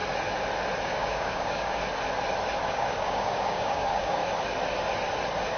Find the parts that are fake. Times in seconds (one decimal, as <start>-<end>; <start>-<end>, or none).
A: 0.8-1.8; 2.7-4.2

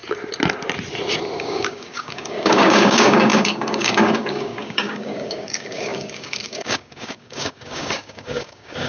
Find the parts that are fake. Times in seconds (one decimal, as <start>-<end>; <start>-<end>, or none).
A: 1.4-8.9